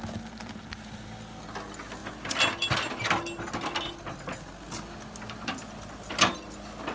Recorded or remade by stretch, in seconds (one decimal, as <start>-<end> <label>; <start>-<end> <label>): 0.0-6.9 recorded